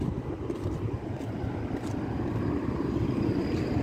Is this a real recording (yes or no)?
yes